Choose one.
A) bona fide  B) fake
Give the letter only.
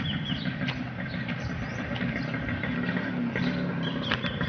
A